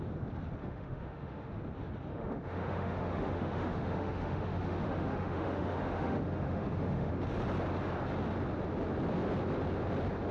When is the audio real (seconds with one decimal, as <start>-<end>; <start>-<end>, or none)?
0.0-0.6; 1.6-2.1; 7.1-10.3